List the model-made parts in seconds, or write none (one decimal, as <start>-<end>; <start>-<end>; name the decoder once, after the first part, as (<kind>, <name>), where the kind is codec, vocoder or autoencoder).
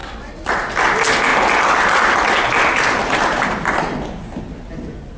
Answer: 0.0-0.7 (vocoder, BigVGAN v2); 1.3-4.4